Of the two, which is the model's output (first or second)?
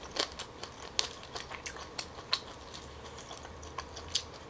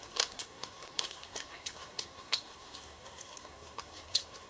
second